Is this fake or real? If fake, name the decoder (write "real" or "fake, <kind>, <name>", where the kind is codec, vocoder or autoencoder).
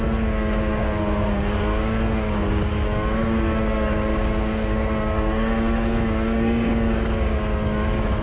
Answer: fake, codec, DAC